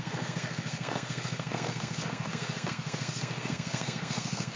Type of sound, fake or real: fake